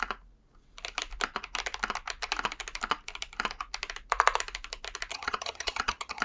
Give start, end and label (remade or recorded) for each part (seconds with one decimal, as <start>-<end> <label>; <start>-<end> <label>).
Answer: 0.0-5.1 recorded; 5.1-6.2 remade